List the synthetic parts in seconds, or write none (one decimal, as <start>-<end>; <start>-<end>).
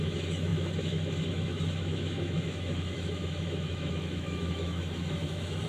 0.0-5.7